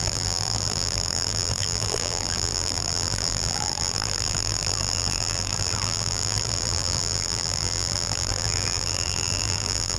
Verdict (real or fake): fake